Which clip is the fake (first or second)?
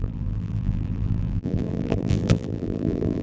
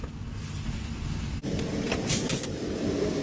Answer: first